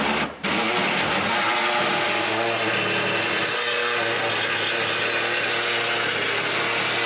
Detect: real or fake real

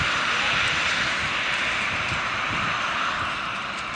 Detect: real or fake fake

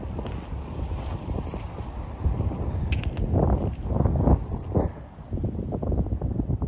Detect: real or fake real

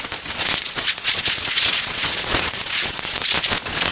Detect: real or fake fake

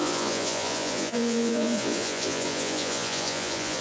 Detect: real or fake fake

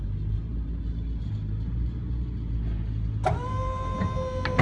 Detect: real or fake real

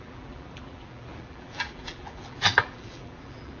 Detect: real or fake fake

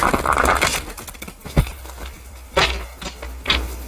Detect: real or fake real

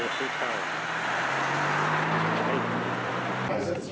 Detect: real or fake real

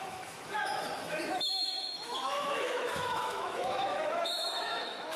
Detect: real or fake fake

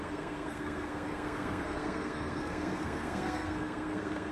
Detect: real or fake fake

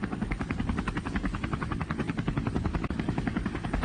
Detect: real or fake fake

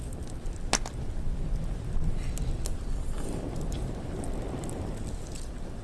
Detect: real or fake real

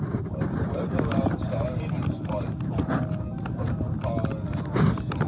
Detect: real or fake real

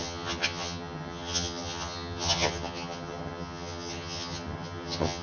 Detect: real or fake fake